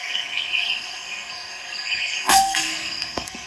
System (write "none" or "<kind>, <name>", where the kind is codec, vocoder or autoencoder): codec, SNAC